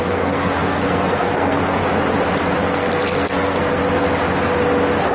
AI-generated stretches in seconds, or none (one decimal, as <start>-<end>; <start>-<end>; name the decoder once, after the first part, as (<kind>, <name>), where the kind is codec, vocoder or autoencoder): 0.0-1.8 (codec, SNAC); 2.7-3.8

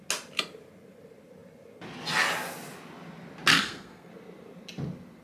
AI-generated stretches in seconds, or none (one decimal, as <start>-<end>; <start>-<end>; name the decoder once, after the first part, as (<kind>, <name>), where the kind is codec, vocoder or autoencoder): 3.5-4.1 (codec, SNAC)

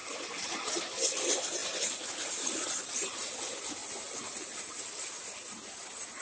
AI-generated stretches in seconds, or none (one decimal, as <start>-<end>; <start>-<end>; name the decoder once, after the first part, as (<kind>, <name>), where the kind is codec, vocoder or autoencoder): none